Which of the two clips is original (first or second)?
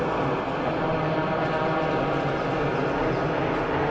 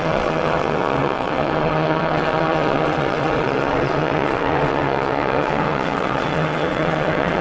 first